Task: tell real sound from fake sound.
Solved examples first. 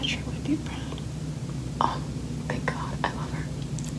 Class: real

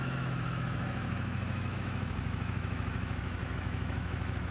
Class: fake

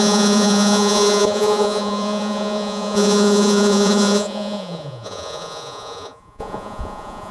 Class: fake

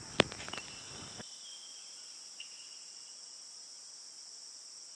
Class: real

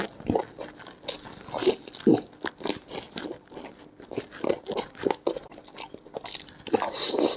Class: real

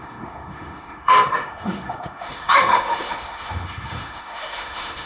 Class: fake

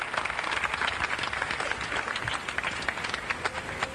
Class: real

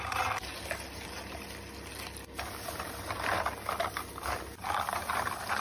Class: real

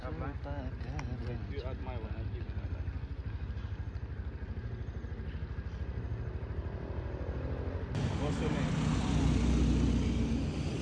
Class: real